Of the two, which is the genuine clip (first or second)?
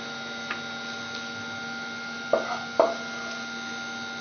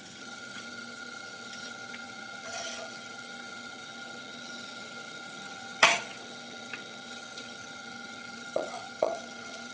first